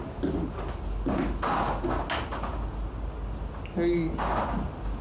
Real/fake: real